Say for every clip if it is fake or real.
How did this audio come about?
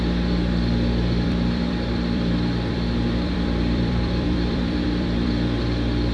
fake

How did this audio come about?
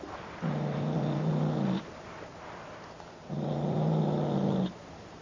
fake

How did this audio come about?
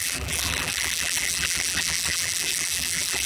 fake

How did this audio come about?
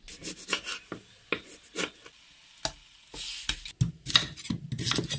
real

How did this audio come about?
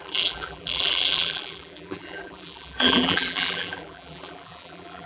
fake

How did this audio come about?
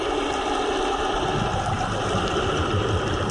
real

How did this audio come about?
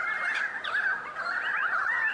real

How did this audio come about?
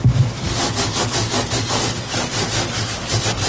real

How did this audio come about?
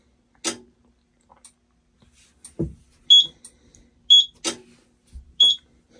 real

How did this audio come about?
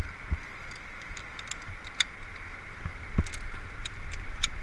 fake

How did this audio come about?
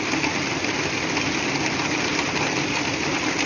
real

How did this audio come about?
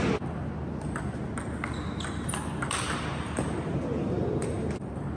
real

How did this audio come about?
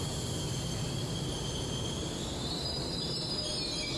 real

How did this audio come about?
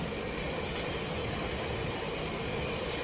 fake